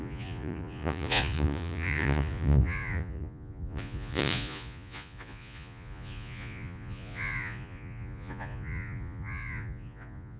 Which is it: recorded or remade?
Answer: remade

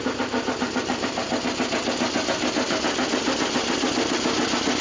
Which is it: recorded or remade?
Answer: recorded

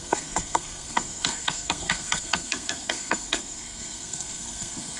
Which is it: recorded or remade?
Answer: remade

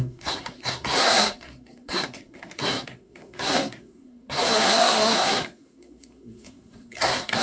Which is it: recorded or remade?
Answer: remade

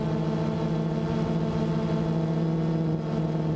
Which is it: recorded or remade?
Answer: recorded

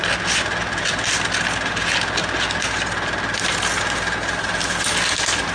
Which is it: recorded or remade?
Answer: recorded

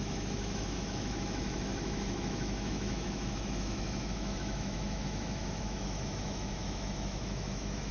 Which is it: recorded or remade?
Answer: remade